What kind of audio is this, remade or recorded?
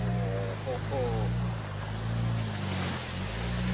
recorded